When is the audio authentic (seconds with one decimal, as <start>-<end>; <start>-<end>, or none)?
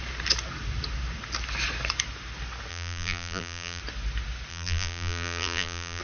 0.0-2.7; 3.8-4.5